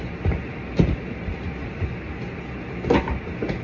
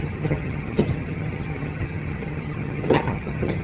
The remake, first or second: second